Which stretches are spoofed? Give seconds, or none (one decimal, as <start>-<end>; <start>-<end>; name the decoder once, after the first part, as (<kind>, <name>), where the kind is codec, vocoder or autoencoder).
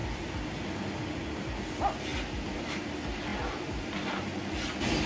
none